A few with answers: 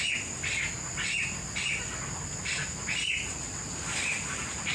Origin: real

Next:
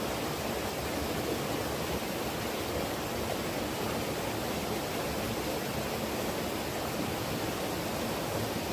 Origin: real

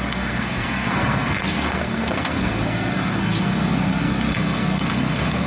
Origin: fake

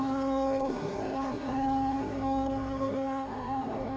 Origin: fake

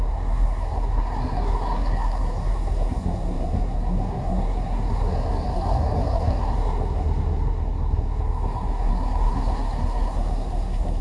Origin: fake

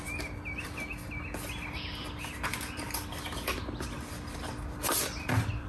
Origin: real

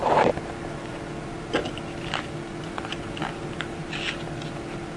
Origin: real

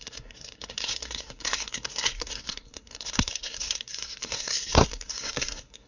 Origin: fake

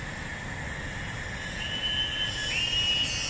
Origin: real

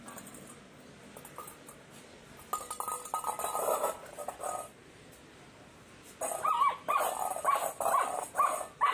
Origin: real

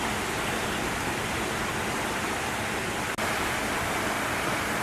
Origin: real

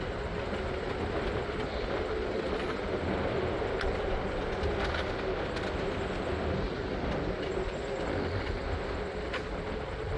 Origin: real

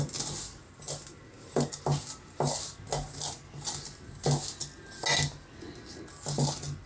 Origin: real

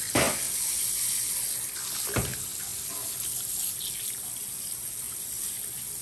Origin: real